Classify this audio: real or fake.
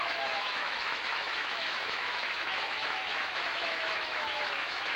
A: fake